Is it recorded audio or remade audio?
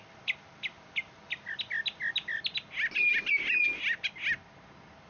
recorded